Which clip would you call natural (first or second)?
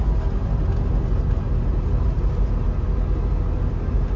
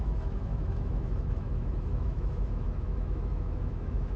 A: first